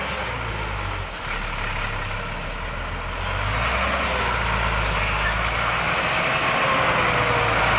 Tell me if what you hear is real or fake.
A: real